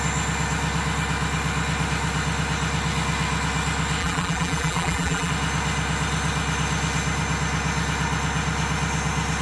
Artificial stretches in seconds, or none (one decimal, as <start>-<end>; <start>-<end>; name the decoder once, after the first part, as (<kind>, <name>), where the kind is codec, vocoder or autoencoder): 4.0-5.3 (vocoder, BigVGAN v2)